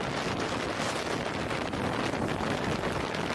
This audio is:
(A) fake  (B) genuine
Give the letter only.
B